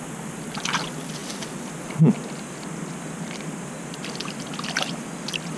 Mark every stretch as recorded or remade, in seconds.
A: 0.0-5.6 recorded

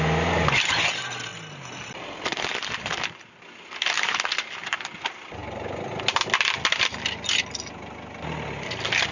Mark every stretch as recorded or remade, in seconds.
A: 0.0-9.1 recorded

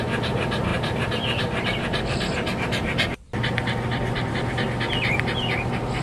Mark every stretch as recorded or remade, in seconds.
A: 0.0-6.0 recorded

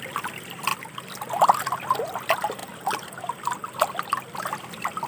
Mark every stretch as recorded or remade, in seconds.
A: 0.0-5.1 recorded